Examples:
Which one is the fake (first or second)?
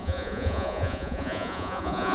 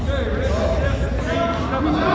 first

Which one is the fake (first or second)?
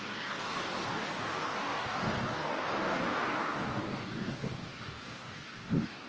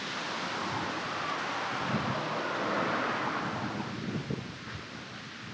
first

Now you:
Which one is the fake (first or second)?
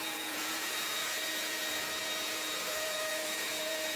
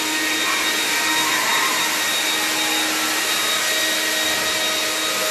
first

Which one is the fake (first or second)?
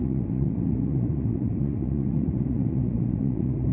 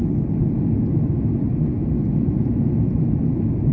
first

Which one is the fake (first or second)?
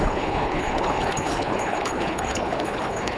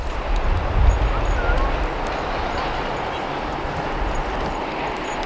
first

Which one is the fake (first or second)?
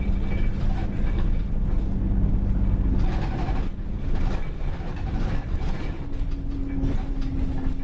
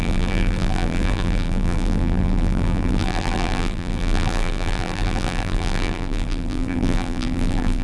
second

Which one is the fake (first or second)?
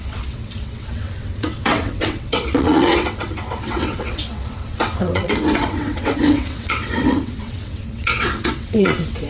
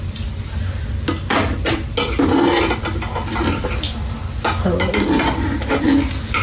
first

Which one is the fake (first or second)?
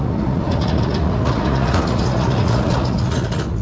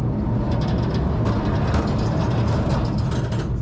first